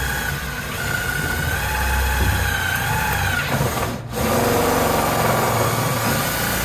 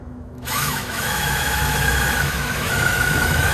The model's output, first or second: second